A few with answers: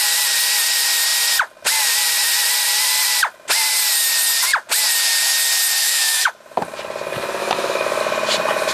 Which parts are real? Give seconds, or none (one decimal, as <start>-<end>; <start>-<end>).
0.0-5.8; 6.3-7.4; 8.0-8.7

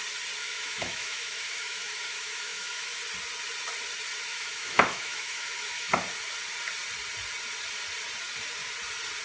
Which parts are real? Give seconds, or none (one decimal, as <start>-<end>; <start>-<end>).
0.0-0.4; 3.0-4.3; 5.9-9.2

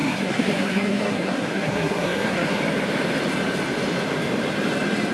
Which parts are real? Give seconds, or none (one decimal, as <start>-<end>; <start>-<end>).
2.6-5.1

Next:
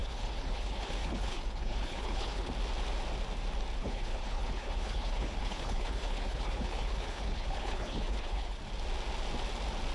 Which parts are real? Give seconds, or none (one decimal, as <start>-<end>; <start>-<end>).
2.5-3.8; 8.6-9.9